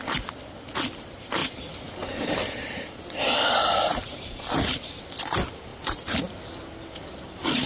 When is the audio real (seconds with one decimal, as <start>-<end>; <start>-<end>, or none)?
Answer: 0.0-1.4; 5.0-5.7; 6.4-7.7